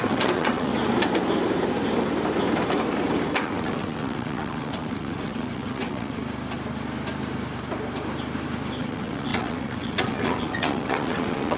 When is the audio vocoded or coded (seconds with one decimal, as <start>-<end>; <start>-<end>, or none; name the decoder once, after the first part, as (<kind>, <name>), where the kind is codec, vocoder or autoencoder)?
0.0-0.7 (vocoder, WaveNeXt); 3.3-6.2; 8.8-11.6